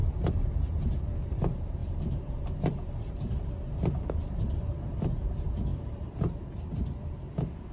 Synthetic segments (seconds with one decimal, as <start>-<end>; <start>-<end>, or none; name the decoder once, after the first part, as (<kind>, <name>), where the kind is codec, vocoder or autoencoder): 1.8-5.3 (vocoder, BigVGAN v2); 5.7-6.3

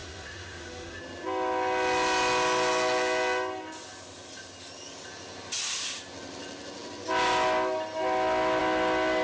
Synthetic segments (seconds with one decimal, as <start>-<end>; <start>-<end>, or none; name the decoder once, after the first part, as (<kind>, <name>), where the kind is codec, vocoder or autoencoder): 0.0-1.0 (autoencoder, DAC-VAE)

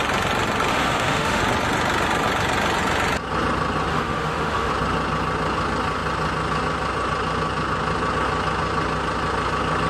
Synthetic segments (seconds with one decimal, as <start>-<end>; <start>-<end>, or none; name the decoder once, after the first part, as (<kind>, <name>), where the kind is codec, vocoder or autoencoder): 0.7-1.4 (autoencoder, DAC-VAE); 3.9-4.7

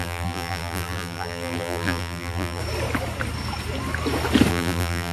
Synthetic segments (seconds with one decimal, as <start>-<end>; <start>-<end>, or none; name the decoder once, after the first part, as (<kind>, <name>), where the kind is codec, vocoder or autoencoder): 0.0-2.6 (vocoder, BigVGAN v2); 4.5-5.1

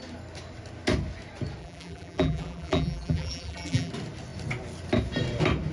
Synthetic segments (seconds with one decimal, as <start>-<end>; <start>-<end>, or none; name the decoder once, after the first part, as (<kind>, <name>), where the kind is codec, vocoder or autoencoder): 1.6-3.9 (vocoder, BigVGAN v2)

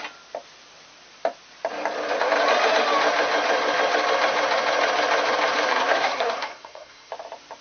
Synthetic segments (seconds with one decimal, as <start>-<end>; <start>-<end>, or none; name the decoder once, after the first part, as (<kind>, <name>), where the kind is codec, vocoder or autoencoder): 5.7-7.1 (codec, SNAC)

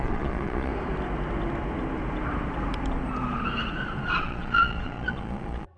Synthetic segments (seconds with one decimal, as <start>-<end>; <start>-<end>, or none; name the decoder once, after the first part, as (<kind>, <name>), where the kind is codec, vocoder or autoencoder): 0.0-0.7 (vocoder, Vocos); 4.2-5.8